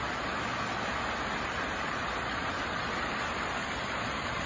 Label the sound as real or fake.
real